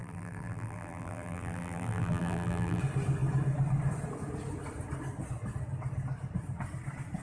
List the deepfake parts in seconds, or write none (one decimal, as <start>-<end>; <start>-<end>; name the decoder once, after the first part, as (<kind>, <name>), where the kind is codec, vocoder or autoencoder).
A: 0.0-2.8 (vocoder, BigVGAN v2)